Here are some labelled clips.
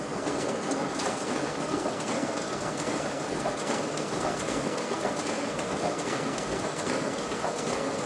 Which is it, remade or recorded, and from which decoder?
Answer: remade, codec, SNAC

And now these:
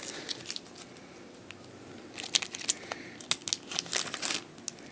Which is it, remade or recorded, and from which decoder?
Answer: recorded